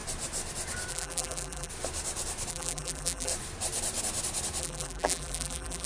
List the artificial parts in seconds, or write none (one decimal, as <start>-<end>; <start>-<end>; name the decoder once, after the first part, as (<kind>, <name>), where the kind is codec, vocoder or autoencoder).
0.9-1.7 (vocoder, BigVGAN v2); 2.5-3.3; 4.6-5.9